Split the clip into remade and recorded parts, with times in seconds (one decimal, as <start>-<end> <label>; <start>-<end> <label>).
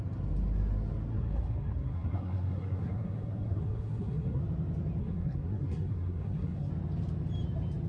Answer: 0.0-1.1 recorded; 1.1-4.4 remade; 4.4-5.0 recorded; 5.0-6.7 remade; 6.7-7.9 recorded